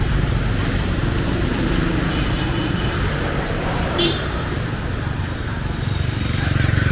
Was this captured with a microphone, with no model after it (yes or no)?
no